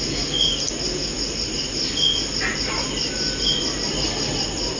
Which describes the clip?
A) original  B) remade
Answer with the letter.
A